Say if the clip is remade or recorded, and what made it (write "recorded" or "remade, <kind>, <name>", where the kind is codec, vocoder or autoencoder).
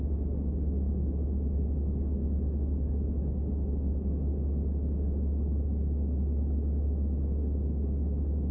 recorded